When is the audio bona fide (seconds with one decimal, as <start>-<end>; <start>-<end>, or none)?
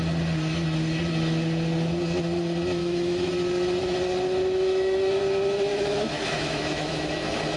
0.0-2.8; 3.3-4.4; 5.2-5.7; 7.0-7.6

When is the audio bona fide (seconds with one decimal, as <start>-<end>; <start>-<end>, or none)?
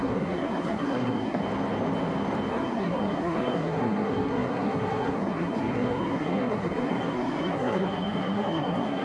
1.4-2.5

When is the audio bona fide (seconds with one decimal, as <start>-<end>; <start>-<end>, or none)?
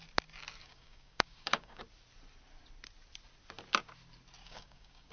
0.0-0.6; 1.8-4.4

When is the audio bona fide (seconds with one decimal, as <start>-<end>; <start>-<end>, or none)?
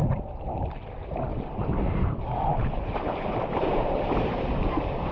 0.7-1.3; 4.4-5.1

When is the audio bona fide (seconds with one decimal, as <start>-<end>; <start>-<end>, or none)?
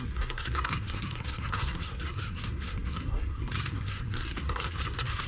none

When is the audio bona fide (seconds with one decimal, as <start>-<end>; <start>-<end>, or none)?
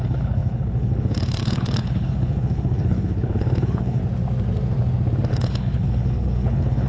4.0-5.3